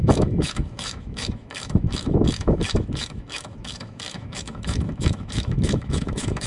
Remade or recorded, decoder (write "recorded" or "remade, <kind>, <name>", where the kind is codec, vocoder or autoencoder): remade, autoencoder, DAC-VAE